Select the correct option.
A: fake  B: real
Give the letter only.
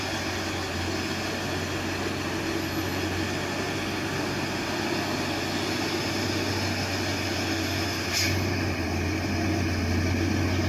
B